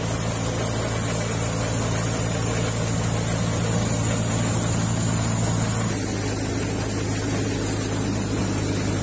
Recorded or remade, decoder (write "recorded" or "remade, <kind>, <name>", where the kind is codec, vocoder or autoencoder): recorded